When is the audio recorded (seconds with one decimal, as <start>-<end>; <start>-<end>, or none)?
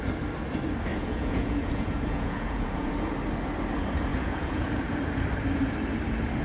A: 0.0-0.9; 2.9-4.1; 5.0-6.4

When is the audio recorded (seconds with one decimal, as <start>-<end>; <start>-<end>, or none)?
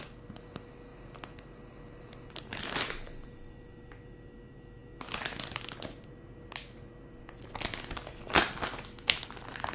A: 0.0-9.7